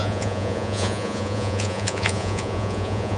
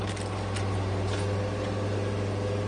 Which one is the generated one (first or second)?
first